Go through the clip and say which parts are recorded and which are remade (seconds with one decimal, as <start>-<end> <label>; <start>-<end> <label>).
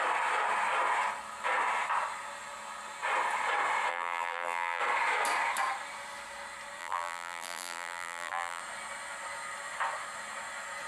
0.0-3.9 recorded; 3.9-4.8 remade; 4.8-6.8 recorded; 6.8-8.6 remade; 8.6-10.9 recorded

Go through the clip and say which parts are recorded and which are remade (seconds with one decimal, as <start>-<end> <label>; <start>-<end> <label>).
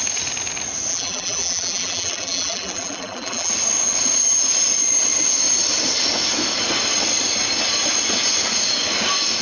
0.0-0.9 recorded; 0.9-3.5 remade; 3.5-9.4 recorded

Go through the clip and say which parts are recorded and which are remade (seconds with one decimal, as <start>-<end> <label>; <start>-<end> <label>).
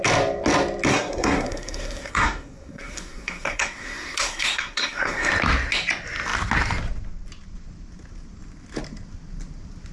0.0-0.9 recorded; 0.9-5.3 remade; 5.3-9.9 recorded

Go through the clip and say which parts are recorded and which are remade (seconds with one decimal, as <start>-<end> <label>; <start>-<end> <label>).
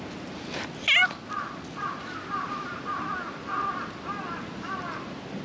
0.0-5.4 recorded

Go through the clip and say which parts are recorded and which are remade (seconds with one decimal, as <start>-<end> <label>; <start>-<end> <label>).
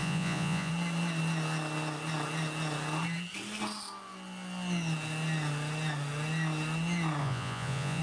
0.0-0.7 remade; 0.7-7.2 recorded; 7.2-8.0 remade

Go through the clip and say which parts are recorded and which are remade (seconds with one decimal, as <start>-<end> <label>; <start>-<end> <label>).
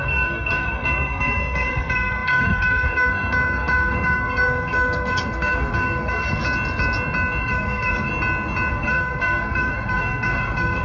0.0-6.4 remade; 6.4-7.4 recorded; 7.4-8.1 remade; 8.1-8.7 recorded; 8.7-10.8 remade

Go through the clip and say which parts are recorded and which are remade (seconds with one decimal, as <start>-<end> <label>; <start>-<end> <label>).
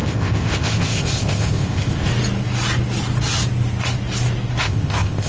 0.0-2.1 remade; 2.1-4.6 recorded; 4.6-5.3 remade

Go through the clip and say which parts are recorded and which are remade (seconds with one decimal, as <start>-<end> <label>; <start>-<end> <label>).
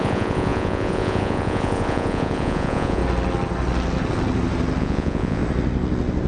0.0-3.0 remade; 3.0-4.8 recorded; 4.8-5.4 remade; 5.4-6.3 recorded